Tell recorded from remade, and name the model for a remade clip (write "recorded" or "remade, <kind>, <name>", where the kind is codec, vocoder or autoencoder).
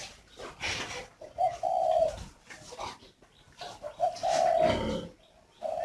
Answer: recorded